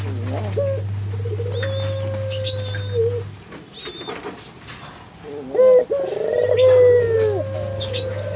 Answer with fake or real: real